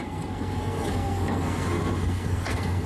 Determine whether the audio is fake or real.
fake